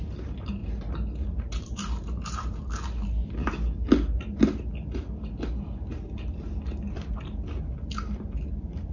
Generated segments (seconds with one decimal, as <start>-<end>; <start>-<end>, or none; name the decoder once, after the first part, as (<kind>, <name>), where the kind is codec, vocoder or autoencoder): none